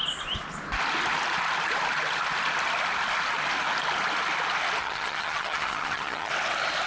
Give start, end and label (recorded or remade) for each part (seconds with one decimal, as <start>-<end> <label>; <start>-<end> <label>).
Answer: 0.0-4.8 recorded; 4.8-6.3 remade; 6.3-6.9 recorded